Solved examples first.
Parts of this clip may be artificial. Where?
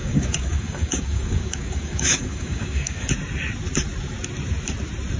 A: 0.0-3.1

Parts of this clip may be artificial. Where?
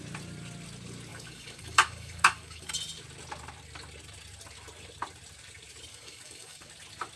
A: 1.1-2.7; 5.9-6.7